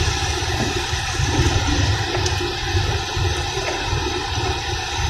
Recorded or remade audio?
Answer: recorded